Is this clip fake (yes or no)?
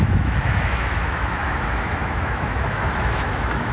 yes